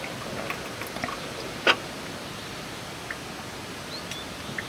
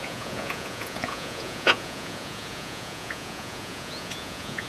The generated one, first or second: second